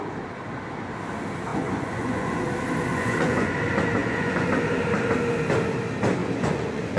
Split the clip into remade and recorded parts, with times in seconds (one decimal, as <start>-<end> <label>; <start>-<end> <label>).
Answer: 0.0-1.5 recorded; 1.5-2.4 remade; 2.4-2.9 recorded; 2.9-3.5 remade; 3.5-4.0 recorded; 4.0-4.5 remade; 4.5-6.2 recorded; 6.2-7.0 remade